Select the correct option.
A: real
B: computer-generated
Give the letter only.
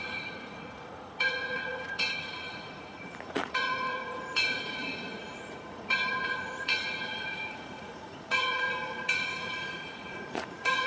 B